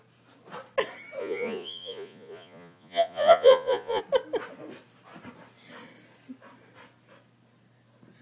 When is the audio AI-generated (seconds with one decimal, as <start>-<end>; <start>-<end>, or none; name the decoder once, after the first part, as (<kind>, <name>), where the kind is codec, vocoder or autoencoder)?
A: 1.2-4.0 (vocoder, Vocos)

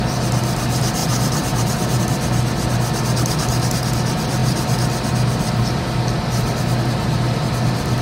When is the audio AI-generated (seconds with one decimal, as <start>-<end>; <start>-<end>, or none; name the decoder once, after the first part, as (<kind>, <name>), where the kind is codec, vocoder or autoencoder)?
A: 1.0-2.0 (vocoder, BigVGAN v2)

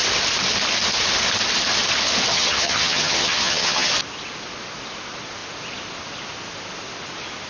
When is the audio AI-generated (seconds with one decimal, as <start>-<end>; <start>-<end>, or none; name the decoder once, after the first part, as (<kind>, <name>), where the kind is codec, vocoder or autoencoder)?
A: 2.3-3.9 (vocoder, HiFi-GAN)

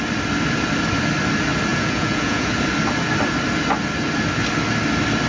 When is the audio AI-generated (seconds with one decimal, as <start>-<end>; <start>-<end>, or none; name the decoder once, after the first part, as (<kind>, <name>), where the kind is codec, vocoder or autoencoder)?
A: 1.7-2.5 (vocoder, Vocos)

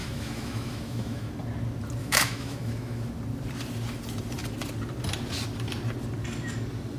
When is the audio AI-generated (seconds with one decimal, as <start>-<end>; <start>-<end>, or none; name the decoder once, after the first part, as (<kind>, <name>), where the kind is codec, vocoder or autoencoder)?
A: 0.0-1.3 (autoencoder, DAC-VAE); 2.0-3.1

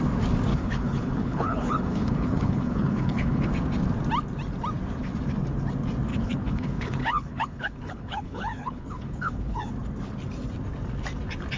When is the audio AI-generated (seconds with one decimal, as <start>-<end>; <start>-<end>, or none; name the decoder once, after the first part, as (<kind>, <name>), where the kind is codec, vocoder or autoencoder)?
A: 0.5-3.5 (codec, HILCodec); 6.1-9.7

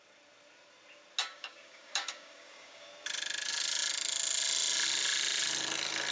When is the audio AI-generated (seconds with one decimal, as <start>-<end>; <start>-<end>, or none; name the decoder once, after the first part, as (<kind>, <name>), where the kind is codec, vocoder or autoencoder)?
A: 1.2-2.9 (codec, DAC)